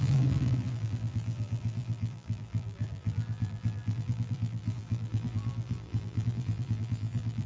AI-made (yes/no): yes